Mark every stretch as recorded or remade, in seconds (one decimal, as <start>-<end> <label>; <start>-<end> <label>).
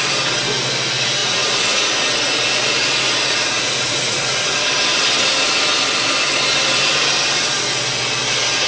0.0-1.2 recorded; 1.2-4.6 remade; 4.6-8.7 recorded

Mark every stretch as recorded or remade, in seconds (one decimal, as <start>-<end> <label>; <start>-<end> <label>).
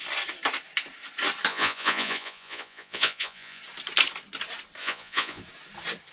0.0-1.5 recorded; 1.5-3.6 remade; 3.6-4.8 recorded; 4.8-5.4 remade; 5.4-6.1 recorded